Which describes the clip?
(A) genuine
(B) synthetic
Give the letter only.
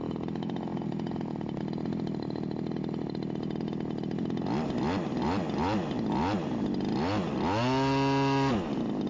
A